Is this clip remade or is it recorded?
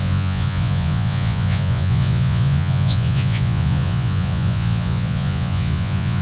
remade